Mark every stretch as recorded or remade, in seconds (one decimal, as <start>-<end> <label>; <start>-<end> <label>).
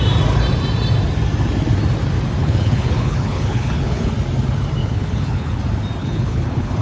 0.0-2.4 recorded; 2.4-4.1 remade; 4.1-4.8 recorded; 4.8-5.6 remade; 5.6-6.0 recorded; 6.0-6.8 remade